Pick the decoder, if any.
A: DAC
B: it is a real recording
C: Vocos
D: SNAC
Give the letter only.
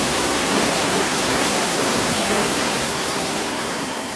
D